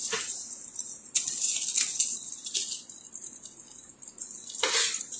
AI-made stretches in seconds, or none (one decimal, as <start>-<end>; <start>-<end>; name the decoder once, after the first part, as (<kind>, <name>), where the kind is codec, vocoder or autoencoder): none